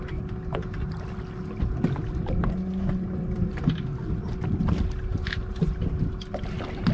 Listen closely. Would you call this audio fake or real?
real